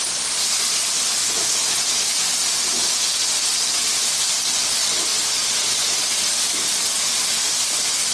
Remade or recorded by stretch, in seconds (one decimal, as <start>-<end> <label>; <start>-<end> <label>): 0.0-1.1 remade; 1.1-4.1 recorded; 4.1-8.1 remade

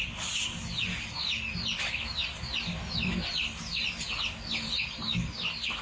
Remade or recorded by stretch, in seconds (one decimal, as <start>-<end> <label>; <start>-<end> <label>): 0.0-5.8 recorded

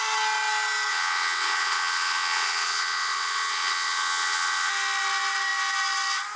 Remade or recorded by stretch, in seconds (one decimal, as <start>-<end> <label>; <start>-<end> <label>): 0.0-0.9 recorded; 0.9-4.7 remade; 4.7-6.4 recorded

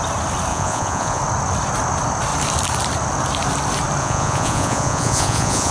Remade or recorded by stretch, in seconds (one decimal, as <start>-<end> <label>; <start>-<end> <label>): 0.0-0.5 recorded; 0.5-1.2 remade; 1.2-4.0 recorded; 4.0-5.7 remade

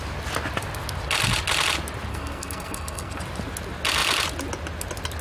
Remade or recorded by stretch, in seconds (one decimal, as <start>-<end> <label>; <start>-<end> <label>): 0.0-2.1 recorded; 2.1-3.2 remade; 3.2-5.2 recorded

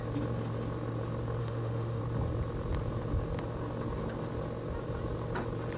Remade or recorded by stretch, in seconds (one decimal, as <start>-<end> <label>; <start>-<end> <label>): 0.0-1.4 recorded; 1.4-2.0 remade; 2.0-5.8 recorded

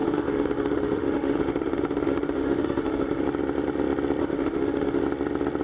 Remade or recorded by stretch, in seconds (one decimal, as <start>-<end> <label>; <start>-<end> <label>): 0.0-3.2 remade; 3.2-4.2 recorded; 4.2-5.0 remade; 5.0-5.6 recorded

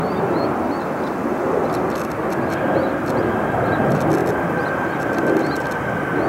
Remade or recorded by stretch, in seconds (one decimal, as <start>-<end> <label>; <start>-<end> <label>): 0.0-6.3 recorded